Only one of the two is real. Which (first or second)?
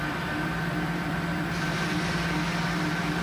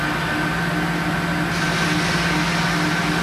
second